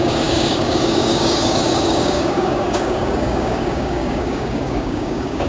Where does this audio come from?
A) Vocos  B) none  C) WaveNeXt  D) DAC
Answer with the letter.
D